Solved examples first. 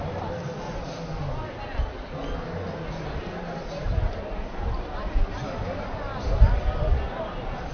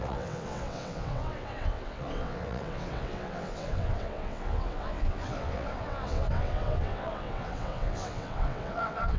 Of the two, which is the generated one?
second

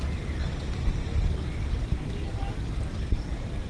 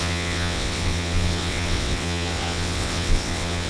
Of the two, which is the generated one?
second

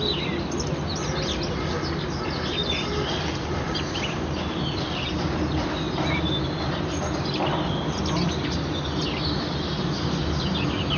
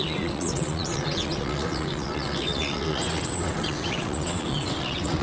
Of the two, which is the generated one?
second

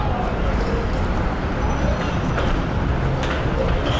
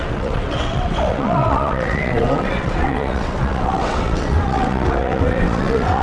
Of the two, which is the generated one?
second